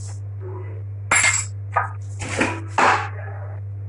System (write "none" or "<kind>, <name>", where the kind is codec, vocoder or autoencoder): none